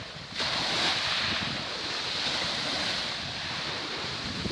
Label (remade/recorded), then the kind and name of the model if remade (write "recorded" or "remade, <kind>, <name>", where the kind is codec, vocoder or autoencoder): recorded